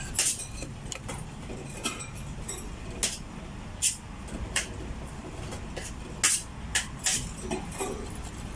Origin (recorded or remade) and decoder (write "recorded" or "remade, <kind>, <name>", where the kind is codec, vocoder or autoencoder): recorded